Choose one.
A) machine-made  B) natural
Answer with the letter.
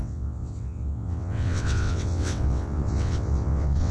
A